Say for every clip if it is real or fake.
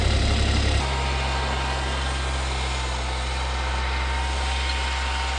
real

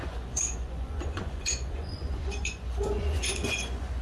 fake